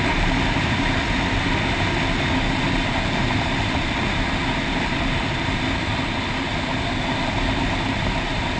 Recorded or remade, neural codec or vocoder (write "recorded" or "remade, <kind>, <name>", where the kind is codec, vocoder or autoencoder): remade, vocoder, BigVGAN v2